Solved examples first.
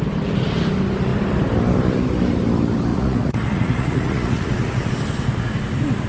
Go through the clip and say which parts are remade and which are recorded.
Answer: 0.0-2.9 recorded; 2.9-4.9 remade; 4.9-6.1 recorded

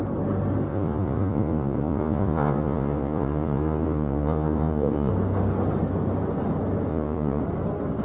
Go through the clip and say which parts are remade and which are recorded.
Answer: 0.0-0.7 recorded; 0.7-5.1 remade; 5.1-6.9 recorded; 6.9-7.4 remade; 7.4-8.0 recorded

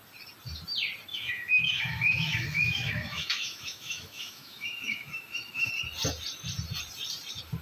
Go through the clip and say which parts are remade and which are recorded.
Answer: 0.0-1.1 recorded; 1.1-5.7 remade; 5.7-7.6 recorded

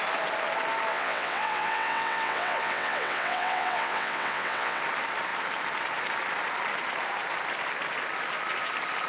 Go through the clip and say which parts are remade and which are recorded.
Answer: 0.0-0.9 recorded; 0.9-4.8 remade; 4.8-9.1 recorded